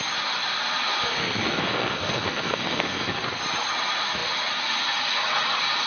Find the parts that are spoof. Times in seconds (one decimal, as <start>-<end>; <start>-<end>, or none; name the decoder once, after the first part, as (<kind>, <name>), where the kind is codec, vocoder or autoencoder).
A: 1.0-3.4 (codec, SNAC)